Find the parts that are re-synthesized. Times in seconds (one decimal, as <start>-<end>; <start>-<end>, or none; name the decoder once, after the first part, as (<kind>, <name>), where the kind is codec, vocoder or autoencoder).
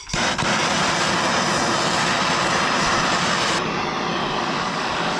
4.2-5.2 (codec, DAC)